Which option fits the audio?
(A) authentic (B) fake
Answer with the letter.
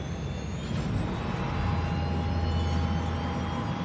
A